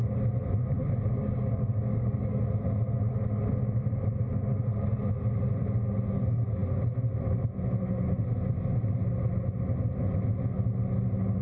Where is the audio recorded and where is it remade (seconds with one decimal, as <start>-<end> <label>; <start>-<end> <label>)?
0.0-0.8 recorded; 0.8-2.4 remade; 2.4-11.4 recorded